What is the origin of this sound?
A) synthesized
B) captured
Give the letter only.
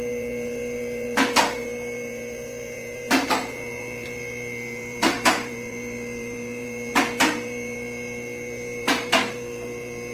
A